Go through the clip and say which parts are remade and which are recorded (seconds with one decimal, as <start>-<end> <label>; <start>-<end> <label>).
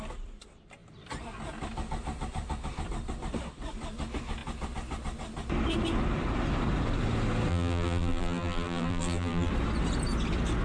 0.0-7.5 recorded; 7.5-9.5 remade; 9.5-10.6 recorded